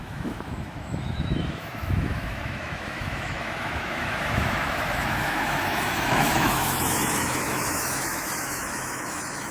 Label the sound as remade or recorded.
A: remade